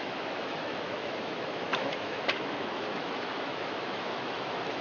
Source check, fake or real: fake